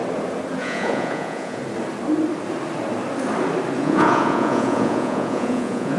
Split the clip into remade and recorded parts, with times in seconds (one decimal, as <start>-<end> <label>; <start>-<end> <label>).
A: 0.0-0.6 recorded; 0.6-1.6 remade; 1.6-3.8 recorded; 3.8-6.0 remade